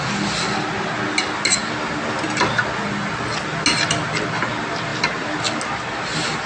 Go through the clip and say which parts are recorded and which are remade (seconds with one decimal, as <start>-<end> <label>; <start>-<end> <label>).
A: 0.0-6.5 recorded